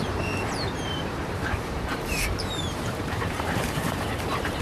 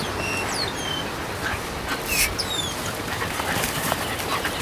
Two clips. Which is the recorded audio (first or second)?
second